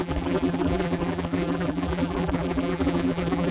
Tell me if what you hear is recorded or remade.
remade